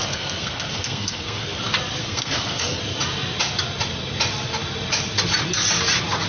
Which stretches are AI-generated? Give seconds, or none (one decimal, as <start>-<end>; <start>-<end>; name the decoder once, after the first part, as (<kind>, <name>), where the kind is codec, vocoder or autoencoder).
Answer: 0.0-1.6 (codec, SNAC); 2.0-2.8